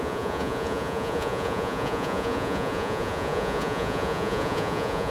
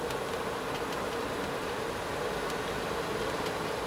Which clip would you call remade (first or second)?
first